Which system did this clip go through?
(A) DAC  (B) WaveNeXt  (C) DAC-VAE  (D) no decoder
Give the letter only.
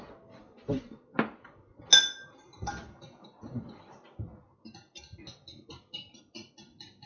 D